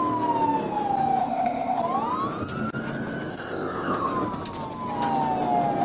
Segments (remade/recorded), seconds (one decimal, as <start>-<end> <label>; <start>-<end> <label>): 0.0-1.2 recorded; 1.2-1.8 remade; 1.8-3.3 recorded; 3.3-4.1 remade; 4.1-5.8 recorded